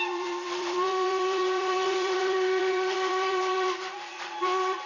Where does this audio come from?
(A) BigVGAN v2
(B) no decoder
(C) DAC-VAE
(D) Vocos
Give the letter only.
A